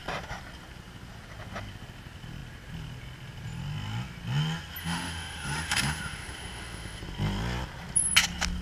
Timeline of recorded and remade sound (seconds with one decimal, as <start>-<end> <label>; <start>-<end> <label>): 0.0-4.8 recorded; 4.8-7.0 remade; 7.0-8.6 recorded